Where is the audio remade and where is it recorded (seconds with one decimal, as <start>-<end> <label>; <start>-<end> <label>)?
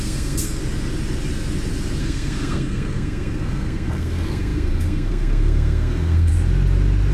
0.0-0.6 remade; 0.6-2.0 recorded; 2.0-6.3 remade; 6.3-7.1 recorded